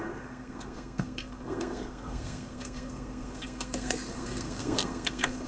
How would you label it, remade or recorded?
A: remade